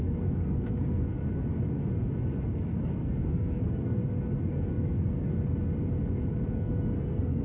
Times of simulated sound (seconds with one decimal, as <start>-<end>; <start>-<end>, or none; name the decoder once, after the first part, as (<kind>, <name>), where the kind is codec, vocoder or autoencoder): 0.0-1.2 (codec, SNAC); 2.5-4.0; 4.5-5.3; 6.5-7.4